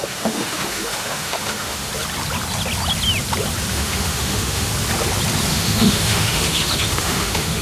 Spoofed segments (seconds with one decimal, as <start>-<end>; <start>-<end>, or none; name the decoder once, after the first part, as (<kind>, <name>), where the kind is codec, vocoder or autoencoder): 0.0-1.9 (autoencoder, DAC-VAE); 3.7-4.7; 5.5-7.6